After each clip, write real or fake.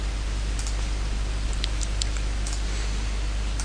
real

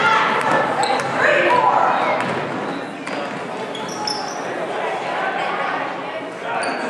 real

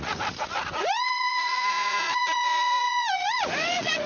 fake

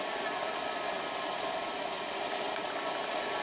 real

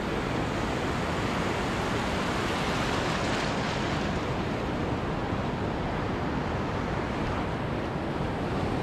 real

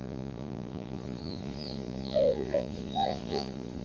fake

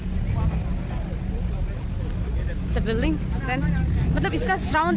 real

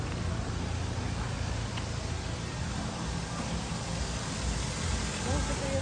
real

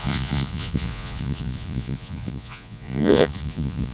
fake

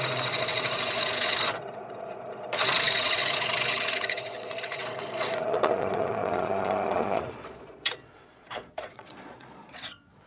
fake